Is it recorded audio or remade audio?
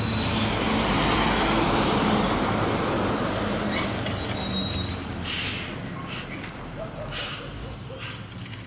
recorded